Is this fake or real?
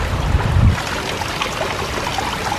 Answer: real